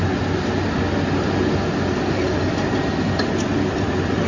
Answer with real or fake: real